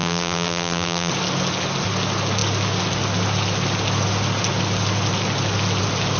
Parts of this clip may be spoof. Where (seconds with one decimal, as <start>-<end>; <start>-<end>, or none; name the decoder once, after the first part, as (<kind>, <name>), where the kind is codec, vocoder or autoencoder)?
0.0-1.1 (vocoder, BigVGAN v2)